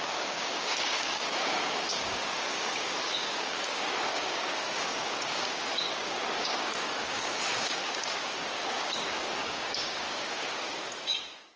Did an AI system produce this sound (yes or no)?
yes